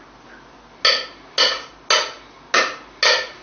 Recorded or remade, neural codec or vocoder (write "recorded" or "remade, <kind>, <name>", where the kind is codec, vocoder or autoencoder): recorded